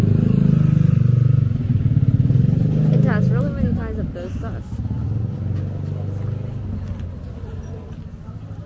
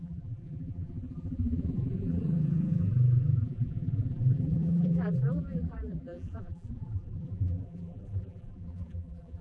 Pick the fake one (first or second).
second